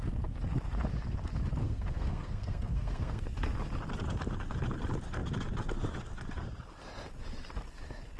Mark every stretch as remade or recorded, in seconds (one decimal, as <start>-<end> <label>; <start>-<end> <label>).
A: 0.0-1.6 recorded; 1.6-3.3 remade; 3.3-8.2 recorded